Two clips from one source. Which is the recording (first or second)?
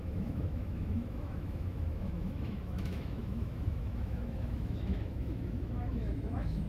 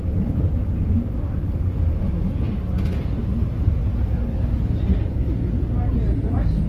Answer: second